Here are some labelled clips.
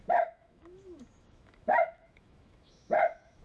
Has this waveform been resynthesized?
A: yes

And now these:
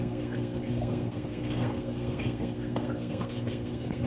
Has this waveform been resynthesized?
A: yes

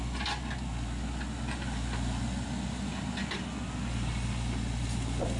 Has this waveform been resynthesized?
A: no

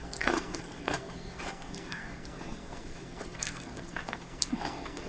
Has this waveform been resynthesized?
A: yes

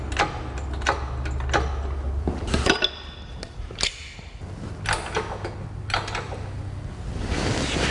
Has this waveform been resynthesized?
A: no